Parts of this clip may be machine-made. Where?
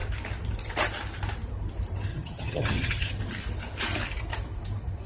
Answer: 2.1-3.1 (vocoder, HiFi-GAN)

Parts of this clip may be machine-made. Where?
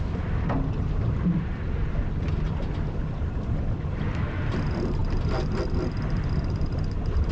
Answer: none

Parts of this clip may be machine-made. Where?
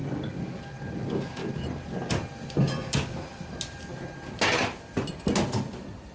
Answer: none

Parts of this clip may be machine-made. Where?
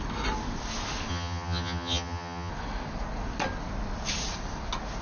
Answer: 1.1-2.5 (vocoder, HiFi-GAN)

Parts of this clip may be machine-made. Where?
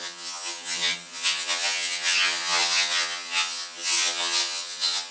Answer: 0.0-5.1 (vocoder, HiFi-GAN)